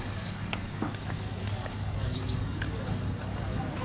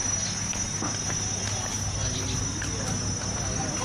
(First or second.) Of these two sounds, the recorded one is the second